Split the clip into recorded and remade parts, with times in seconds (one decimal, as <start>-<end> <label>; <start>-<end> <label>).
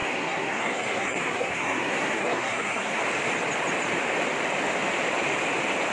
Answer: 0.0-3.0 remade; 3.0-5.9 recorded